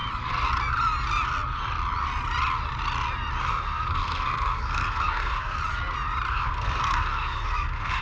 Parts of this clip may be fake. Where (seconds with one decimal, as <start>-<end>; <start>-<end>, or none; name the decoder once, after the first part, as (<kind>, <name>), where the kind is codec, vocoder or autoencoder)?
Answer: 3.4-5.6 (codec, SNAC); 6.3-8.0